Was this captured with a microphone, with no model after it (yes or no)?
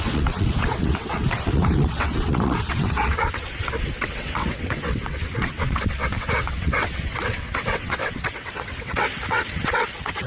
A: no